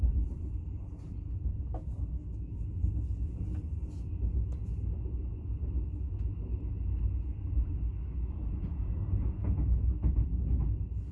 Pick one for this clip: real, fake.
real